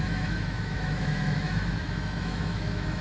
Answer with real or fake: fake